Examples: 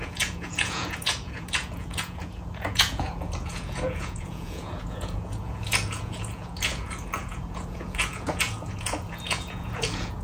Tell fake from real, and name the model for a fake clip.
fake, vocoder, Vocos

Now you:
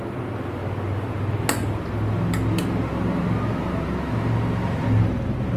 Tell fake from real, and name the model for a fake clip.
real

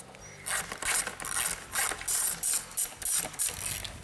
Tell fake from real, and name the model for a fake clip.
real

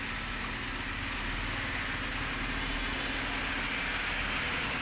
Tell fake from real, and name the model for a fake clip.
real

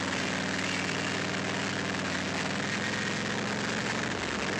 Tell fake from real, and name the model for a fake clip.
real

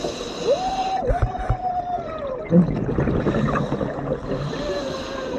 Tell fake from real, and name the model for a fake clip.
real